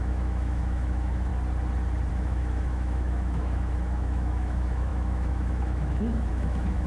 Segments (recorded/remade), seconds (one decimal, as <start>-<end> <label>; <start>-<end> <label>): 0.0-1.3 remade; 1.3-2.1 recorded; 2.1-6.9 remade